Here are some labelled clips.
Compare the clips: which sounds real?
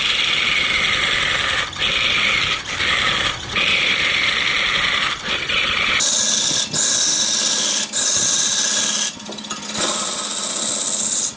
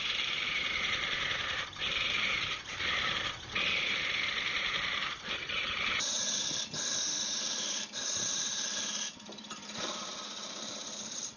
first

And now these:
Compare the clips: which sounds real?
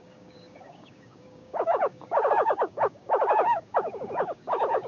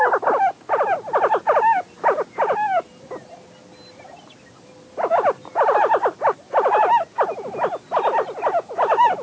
second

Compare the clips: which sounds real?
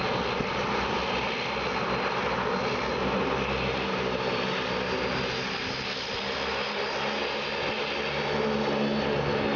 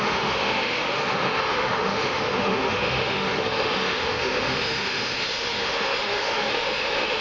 first